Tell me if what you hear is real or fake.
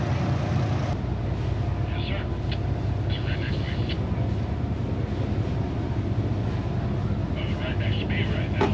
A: real